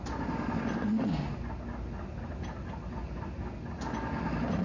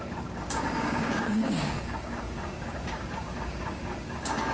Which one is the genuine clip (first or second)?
first